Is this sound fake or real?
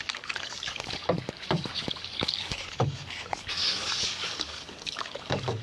fake